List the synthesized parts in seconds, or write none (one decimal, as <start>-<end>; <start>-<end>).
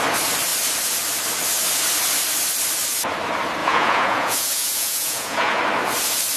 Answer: 3.6-5.6